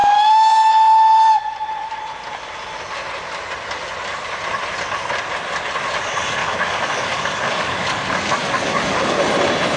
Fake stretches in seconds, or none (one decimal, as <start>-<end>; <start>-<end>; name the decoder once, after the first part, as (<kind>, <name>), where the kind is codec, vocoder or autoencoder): 0.0-0.7 (codec, DAC); 6.4-9.2